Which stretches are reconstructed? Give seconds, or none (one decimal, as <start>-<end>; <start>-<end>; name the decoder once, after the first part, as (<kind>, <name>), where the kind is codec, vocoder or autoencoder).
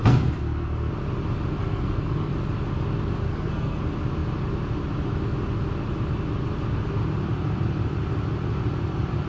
0.0-0.9 (codec, SNAC); 1.6-2.3; 3.3-3.8